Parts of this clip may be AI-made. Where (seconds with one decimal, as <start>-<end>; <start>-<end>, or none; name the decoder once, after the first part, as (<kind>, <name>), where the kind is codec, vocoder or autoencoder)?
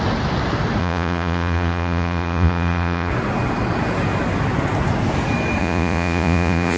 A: 0.8-3.1 (vocoder, Vocos); 5.6-6.8